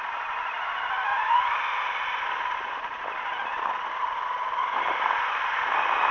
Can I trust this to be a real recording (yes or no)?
yes